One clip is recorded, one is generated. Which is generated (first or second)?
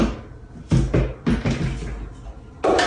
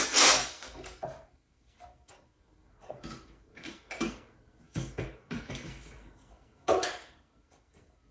second